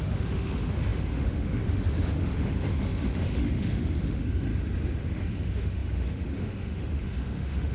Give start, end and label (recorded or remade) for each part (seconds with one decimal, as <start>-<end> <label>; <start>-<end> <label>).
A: 0.0-4.5 remade; 4.5-5.0 recorded; 5.0-7.7 remade